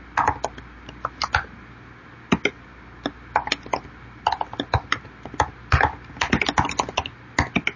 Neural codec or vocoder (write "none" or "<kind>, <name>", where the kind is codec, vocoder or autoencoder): none